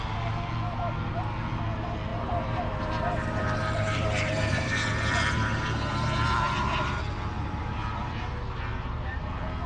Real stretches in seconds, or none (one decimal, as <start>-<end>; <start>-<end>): 0.0-2.1; 7.0-7.6; 9.2-9.7